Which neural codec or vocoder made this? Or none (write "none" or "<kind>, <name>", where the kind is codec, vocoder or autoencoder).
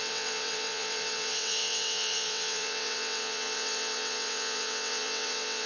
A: vocoder, WaveNeXt